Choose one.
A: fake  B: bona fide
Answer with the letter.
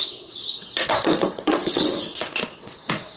A